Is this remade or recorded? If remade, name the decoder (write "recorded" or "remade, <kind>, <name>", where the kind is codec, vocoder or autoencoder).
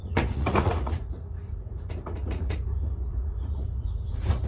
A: remade, vocoder, Vocos